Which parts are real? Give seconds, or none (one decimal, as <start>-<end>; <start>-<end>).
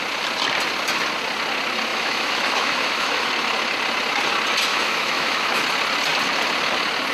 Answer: 0.0-1.9; 3.3-4.7; 5.6-7.1